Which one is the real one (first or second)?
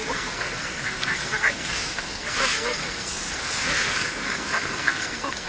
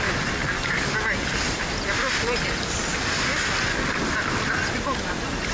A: second